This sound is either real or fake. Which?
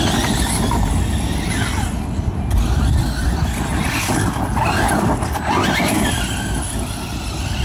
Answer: real